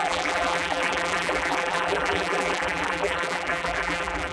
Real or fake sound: fake